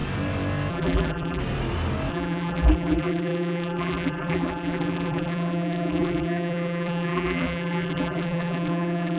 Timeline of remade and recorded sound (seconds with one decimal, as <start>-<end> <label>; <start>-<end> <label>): 0.0-0.7 recorded; 0.7-1.4 remade; 1.4-2.1 recorded; 2.1-9.2 remade